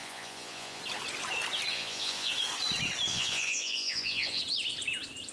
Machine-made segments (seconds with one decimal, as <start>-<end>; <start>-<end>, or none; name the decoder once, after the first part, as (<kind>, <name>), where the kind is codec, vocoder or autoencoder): 0.0-0.8 (vocoder, Vocos); 1.7-2.3; 3.1-4.4